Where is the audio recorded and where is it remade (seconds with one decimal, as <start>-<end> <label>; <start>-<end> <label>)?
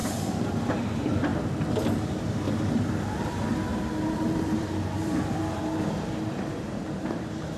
0.0-1.3 remade; 1.3-2.8 recorded; 2.8-7.6 remade